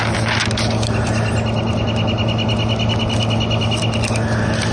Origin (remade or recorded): recorded